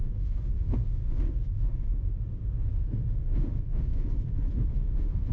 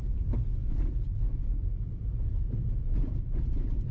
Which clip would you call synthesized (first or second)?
first